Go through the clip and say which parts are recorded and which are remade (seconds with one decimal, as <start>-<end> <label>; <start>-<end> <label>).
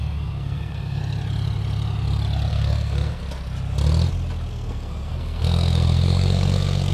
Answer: 0.0-1.0 remade; 1.0-2.5 recorded; 2.5-3.2 remade; 3.2-4.5 recorded; 4.5-6.9 remade